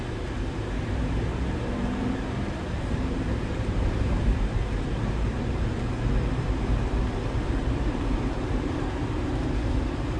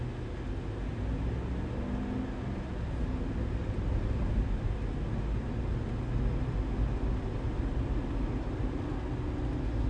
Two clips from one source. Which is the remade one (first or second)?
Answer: first